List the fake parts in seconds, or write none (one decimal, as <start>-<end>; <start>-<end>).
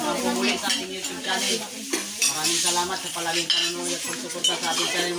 none